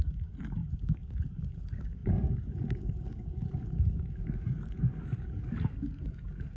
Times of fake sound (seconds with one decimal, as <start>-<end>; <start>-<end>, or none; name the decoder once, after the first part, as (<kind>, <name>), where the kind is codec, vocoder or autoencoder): 0.0-6.6 (codec, DAC)